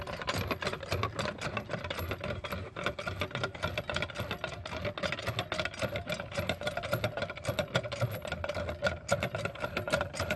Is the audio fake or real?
real